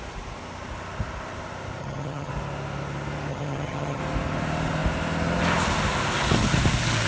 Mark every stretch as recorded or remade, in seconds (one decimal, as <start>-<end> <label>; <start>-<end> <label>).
0.0-1.8 recorded; 1.8-2.3 remade; 2.3-3.3 recorded; 3.3-4.0 remade; 4.0-7.1 recorded